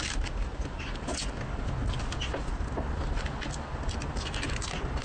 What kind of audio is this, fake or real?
real